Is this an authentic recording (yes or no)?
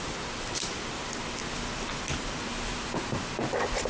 yes